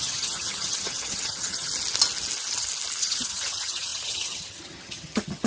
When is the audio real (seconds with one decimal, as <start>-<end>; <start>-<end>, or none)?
1.7-3.0